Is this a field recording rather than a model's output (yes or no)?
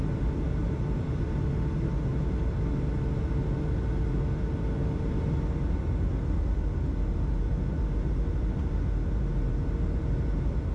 yes